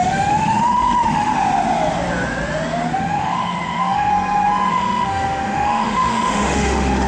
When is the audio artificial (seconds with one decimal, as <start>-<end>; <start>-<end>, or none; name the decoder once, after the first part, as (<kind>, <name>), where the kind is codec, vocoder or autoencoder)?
0.0-1.3 (autoencoder, DAC-VAE); 2.9-4.1; 4.7-7.1